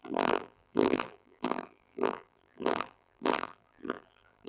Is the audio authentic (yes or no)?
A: no